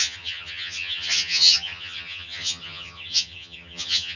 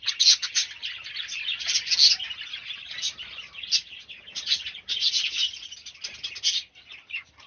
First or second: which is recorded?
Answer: second